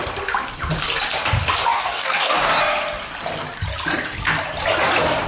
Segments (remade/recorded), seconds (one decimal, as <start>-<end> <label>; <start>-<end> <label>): 0.0-1.7 recorded; 1.7-2.6 remade; 2.6-5.3 recorded